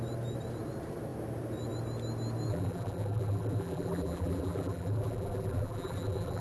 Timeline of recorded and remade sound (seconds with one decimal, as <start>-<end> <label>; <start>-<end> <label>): 0.0-2.5 recorded; 2.5-6.4 remade